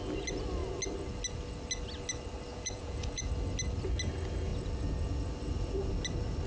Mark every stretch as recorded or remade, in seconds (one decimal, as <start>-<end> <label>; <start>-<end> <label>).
0.0-2.5 recorded; 2.5-3.3 remade; 3.3-6.5 recorded